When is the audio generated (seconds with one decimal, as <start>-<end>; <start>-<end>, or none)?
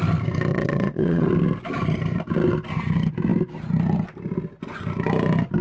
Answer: 0.5-1.3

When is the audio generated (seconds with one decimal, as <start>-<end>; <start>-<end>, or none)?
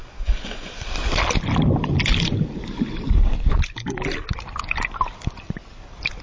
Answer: 0.0-0.7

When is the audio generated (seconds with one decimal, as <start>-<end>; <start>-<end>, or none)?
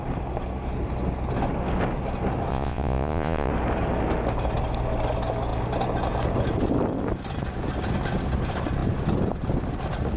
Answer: 2.5-3.5